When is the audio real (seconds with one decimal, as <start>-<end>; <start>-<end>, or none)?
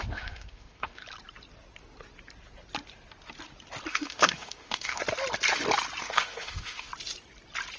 1.0-3.9; 5.0-6.0; 6.9-7.8